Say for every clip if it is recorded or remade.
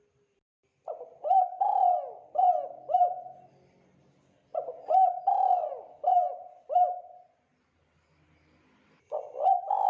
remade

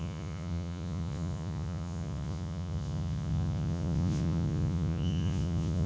remade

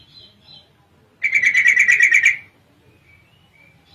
recorded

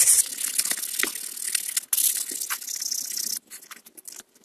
recorded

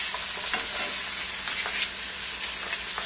recorded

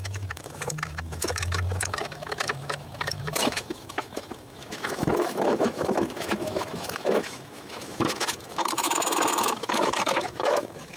remade